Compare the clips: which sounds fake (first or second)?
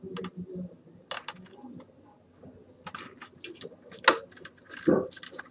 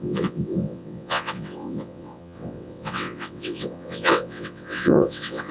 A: second